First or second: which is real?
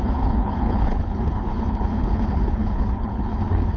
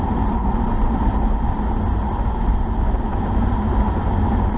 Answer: second